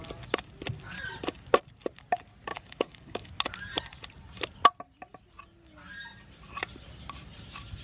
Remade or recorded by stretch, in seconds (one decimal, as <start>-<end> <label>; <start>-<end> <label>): 0.0-2.5 recorded; 2.5-3.3 remade; 3.3-7.8 recorded